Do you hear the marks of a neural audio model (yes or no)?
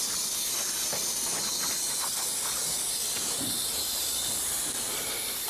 no